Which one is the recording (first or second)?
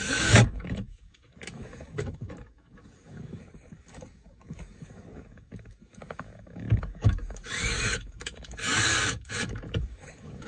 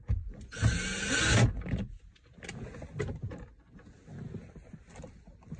second